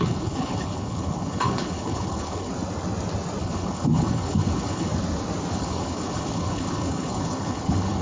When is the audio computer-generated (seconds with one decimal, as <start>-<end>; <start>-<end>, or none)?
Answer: 0.0-2.5; 3.4-4.9; 5.5-8.0